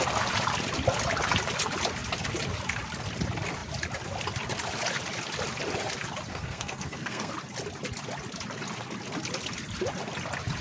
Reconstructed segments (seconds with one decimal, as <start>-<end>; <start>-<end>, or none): 6.3-7.3